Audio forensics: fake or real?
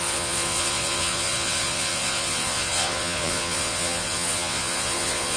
fake